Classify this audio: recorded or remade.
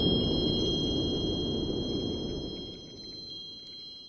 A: recorded